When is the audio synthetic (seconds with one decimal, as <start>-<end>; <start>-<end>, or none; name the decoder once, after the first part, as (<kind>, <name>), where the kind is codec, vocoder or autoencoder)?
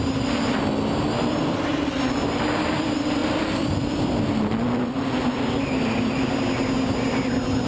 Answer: 3.2-6.4 (vocoder, BigVGAN v2)